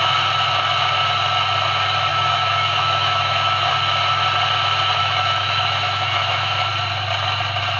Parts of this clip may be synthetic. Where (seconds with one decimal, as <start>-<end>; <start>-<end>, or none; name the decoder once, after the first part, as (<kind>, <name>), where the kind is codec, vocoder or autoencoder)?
2.1-3.7 (autoencoder, DAC-VAE); 5.0-6.7